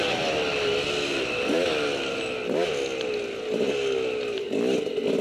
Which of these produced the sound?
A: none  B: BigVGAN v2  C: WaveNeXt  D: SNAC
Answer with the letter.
A